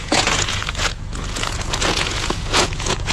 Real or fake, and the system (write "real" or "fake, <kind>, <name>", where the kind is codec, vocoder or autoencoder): fake, vocoder, Vocos